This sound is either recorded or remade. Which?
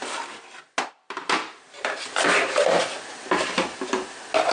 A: recorded